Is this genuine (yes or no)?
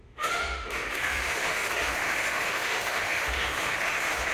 no